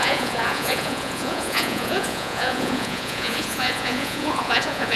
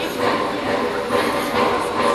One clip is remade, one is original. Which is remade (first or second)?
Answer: first